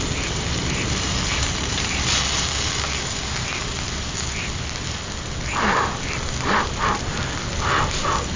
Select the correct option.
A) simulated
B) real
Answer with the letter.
B